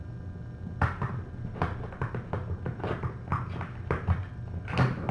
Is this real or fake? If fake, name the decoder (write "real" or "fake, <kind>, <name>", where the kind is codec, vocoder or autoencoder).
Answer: real